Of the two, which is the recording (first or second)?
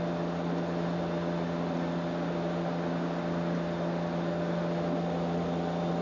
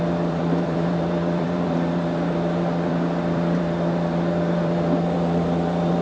first